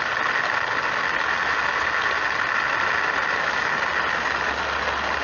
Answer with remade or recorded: recorded